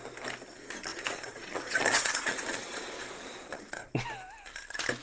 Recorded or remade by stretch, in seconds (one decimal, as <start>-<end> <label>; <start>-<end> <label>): 0.0-0.9 recorded; 0.9-3.9 remade; 3.9-5.0 recorded